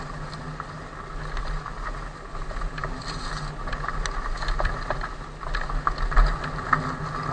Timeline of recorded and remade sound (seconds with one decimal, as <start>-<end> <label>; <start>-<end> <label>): 0.0-7.3 recorded

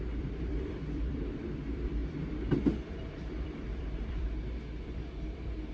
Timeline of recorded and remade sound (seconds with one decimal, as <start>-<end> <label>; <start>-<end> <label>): 0.0-5.7 remade

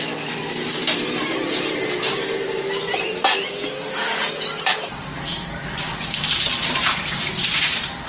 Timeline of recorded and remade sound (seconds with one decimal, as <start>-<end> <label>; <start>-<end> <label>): 0.0-0.4 recorded; 0.4-3.6 remade; 3.6-6.6 recorded; 6.6-7.6 remade; 7.6-8.1 recorded